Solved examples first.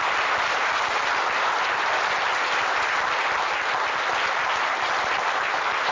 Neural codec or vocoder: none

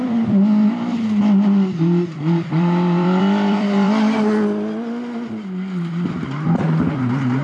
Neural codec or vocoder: vocoder, BigVGAN v2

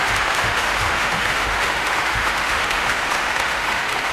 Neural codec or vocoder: autoencoder, DAC-VAE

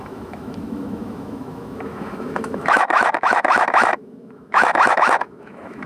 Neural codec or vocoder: autoencoder, DAC-VAE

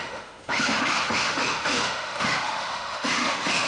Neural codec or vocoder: autoencoder, DAC-VAE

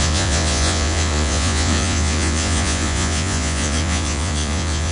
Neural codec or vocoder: vocoder, Vocos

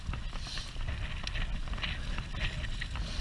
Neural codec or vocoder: none